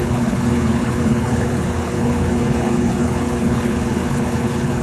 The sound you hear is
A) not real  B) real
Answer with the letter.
A